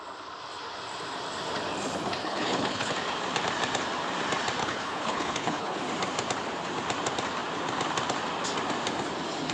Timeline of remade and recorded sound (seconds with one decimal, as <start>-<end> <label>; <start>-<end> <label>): 0.0-2.2 recorded; 2.2-2.9 remade; 2.9-4.6 recorded; 4.6-5.8 remade; 5.8-9.5 recorded